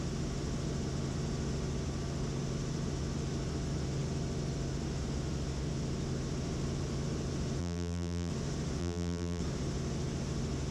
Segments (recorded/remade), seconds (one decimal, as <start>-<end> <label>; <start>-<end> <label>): 0.0-7.6 recorded; 7.6-8.3 remade; 8.3-8.8 recorded; 8.8-9.4 remade; 9.4-10.7 recorded